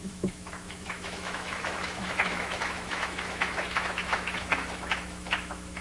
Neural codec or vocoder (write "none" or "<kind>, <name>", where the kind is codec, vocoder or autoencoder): autoencoder, DAC-VAE